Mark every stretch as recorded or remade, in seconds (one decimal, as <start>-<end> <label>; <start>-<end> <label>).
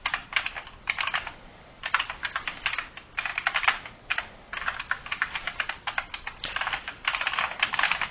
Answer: 0.0-3.3 remade; 3.3-6.5 recorded; 6.5-8.1 remade